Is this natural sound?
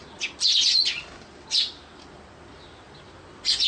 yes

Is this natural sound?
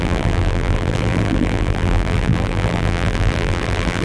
no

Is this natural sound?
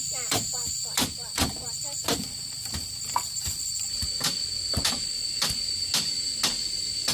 no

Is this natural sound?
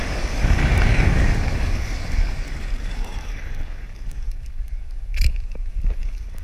no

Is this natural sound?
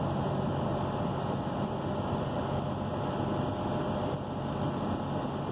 yes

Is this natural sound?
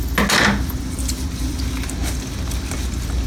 yes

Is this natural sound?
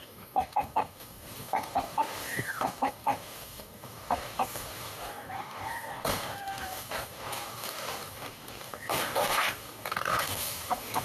no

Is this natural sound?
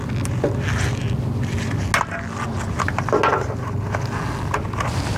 yes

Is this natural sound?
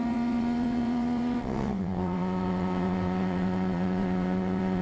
no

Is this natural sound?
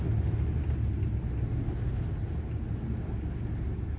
yes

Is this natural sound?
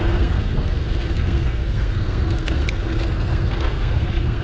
no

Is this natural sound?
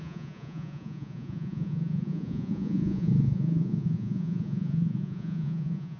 no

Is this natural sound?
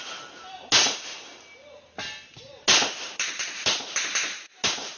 yes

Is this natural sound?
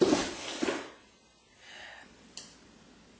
yes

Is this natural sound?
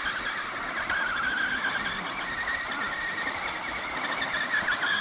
yes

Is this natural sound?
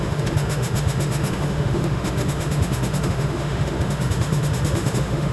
no